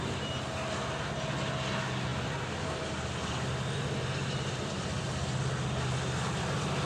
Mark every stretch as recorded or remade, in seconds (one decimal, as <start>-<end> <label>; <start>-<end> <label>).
0.0-6.9 recorded